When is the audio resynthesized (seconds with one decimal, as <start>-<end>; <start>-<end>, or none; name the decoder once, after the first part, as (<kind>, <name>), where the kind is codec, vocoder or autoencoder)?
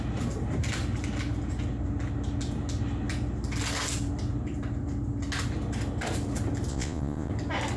6.7-7.3 (vocoder, Vocos)